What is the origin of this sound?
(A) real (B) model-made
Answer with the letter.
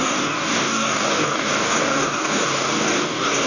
B